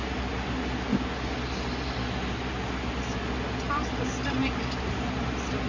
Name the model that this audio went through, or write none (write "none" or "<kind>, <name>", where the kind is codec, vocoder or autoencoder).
none